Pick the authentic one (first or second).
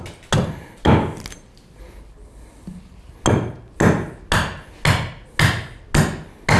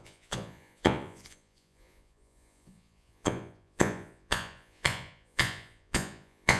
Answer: first